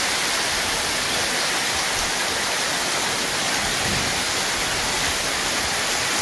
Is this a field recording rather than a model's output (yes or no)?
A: yes